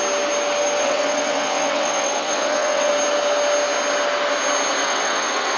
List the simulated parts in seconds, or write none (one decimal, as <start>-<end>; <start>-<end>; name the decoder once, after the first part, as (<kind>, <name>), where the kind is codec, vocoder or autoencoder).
0.8-2.9 (vocoder, WaveNeXt); 4.8-5.6

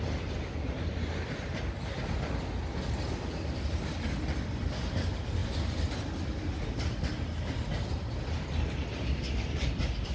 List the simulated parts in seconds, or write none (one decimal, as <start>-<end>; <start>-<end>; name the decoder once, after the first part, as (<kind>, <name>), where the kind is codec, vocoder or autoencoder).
none

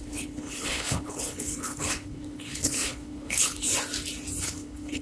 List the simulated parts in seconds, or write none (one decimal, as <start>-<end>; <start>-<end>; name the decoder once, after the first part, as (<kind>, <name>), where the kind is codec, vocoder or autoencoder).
0.0-3.7 (codec, HILCodec); 4.4-5.0

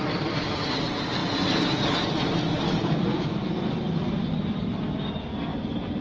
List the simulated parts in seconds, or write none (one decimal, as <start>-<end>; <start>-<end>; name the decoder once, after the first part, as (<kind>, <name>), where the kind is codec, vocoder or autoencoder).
5.5-6.0 (vocoder, BigVGAN v2)